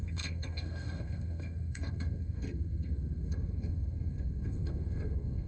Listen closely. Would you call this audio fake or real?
fake